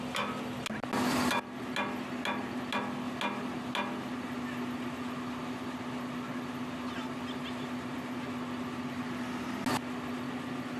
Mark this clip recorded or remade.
recorded